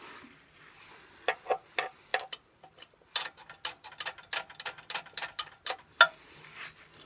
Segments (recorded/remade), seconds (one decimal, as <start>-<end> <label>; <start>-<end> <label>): 0.0-7.1 recorded